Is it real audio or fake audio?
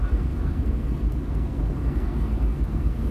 fake